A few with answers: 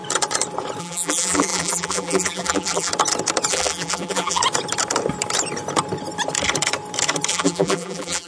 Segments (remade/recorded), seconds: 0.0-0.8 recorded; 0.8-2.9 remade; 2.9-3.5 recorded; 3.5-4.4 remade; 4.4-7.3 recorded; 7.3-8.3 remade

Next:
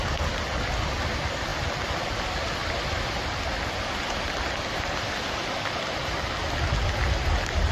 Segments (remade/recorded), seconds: 0.0-7.7 recorded

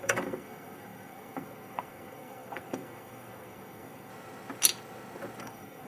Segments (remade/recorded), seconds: 0.0-4.1 remade; 4.1-5.4 recorded; 5.4-5.9 remade